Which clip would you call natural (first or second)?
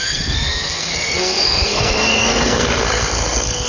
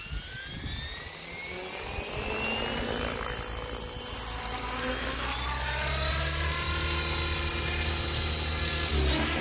second